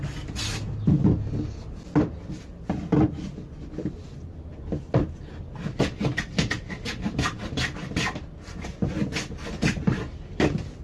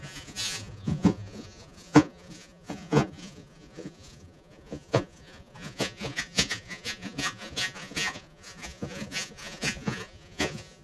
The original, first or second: first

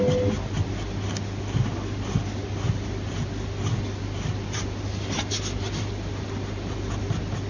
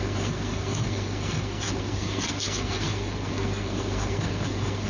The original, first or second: first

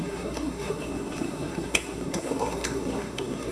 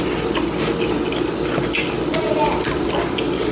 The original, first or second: second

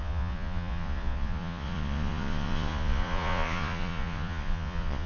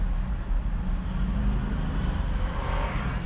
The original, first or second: second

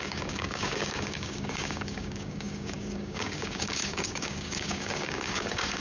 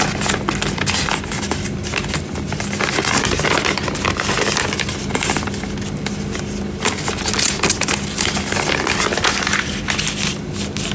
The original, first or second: second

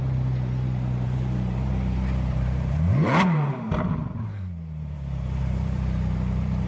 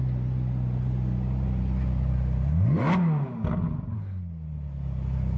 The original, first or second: second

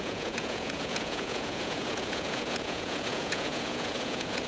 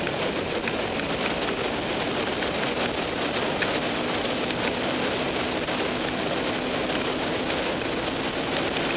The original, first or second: second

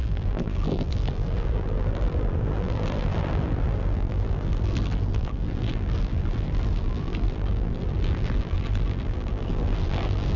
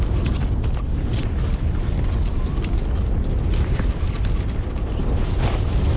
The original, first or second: second